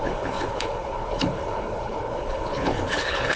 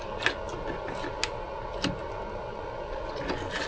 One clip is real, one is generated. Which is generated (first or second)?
first